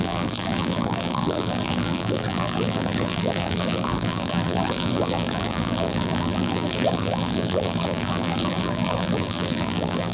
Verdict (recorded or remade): remade